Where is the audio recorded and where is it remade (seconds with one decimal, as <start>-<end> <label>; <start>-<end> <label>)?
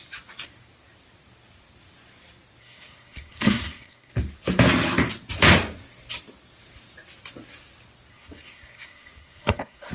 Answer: 0.0-2.6 recorded; 2.6-4.1 remade; 4.1-8.1 recorded; 8.1-9.9 remade